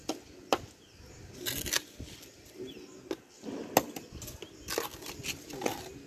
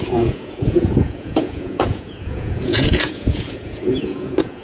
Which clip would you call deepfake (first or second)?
second